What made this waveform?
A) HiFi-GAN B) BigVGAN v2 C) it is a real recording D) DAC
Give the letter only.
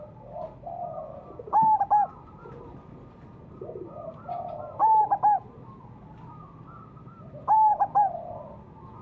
C